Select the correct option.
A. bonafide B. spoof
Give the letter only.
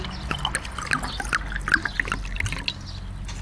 A